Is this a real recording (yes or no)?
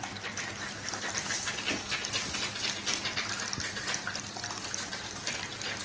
yes